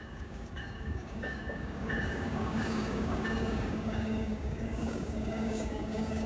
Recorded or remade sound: remade